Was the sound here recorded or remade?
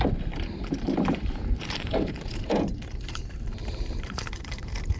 remade